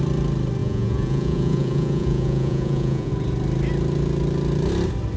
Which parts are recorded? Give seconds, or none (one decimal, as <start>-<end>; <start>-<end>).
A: 0.0-0.6; 3.1-5.2